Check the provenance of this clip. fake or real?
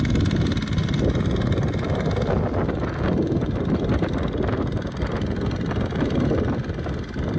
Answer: real